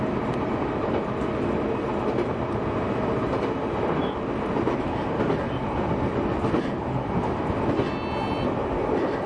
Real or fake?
real